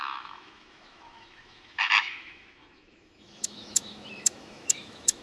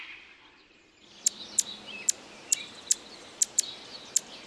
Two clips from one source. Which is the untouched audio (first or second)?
second